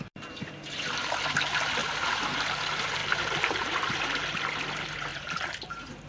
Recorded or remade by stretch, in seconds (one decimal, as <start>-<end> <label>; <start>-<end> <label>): 0.0-1.8 recorded; 1.8-2.6 remade; 2.6-3.0 recorded; 3.0-4.0 remade; 4.0-5.1 recorded; 5.1-6.1 remade